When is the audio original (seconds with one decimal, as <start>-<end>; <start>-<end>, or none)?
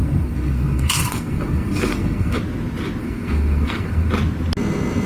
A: 2.4-3.0; 4.1-5.1